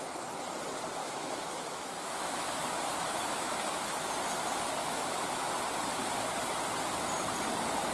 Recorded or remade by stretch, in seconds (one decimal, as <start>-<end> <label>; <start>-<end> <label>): 0.0-1.0 recorded; 1.0-4.1 remade; 4.1-4.8 recorded; 4.8-5.5 remade; 5.5-7.9 recorded